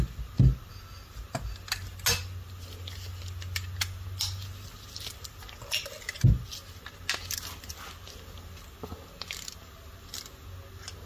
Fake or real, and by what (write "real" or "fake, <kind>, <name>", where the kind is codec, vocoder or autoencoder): real